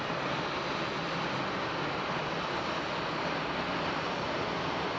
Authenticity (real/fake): real